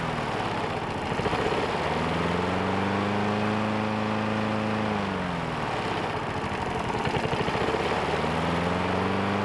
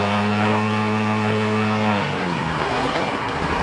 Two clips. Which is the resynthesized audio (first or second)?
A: second